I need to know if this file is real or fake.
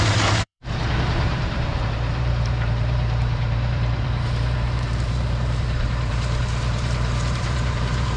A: fake